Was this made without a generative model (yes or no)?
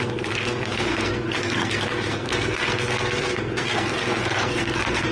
no